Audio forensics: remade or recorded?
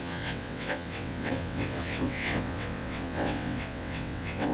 remade